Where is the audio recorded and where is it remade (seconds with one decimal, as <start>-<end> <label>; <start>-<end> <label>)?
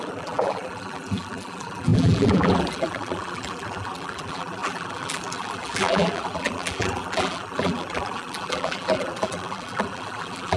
0.0-10.6 remade